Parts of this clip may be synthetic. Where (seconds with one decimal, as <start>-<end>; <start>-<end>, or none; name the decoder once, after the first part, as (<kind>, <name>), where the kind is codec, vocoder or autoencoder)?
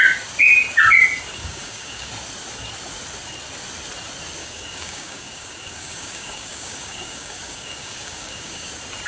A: 1.3-2.1 (codec, DAC); 4.4-8.7